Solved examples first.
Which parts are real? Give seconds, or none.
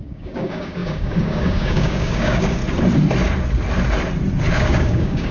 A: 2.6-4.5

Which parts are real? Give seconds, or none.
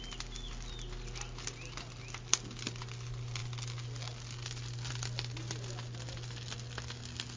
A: 0.0-7.4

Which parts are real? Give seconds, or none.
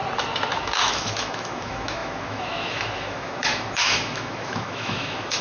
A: 0.0-0.5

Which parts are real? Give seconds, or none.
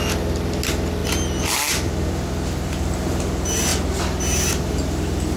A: 0.0-5.4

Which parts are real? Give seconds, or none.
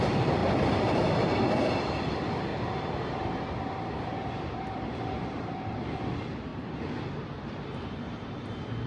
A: 0.0-2.5; 6.0-6.5; 8.4-8.9